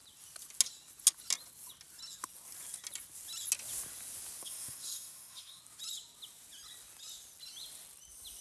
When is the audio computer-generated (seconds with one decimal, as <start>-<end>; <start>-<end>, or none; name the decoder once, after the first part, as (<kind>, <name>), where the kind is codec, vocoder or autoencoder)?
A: 4.4-5.6 (codec, SNAC)